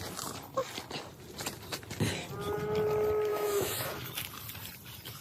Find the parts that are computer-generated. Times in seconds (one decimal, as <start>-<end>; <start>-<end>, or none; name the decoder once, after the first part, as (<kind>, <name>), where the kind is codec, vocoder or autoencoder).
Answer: 3.3-3.9 (autoencoder, DAC-VAE)